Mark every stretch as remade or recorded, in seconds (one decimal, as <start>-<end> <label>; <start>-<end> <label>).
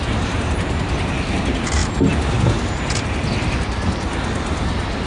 0.0-5.1 recorded